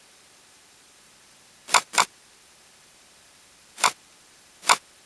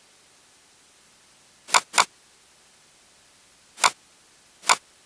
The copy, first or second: first